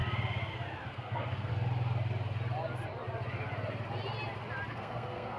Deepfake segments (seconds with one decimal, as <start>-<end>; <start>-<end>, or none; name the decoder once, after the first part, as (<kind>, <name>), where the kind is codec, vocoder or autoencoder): 0.9-1.5 (codec, SNAC); 4.7-5.4